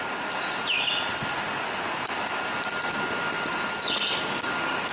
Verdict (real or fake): real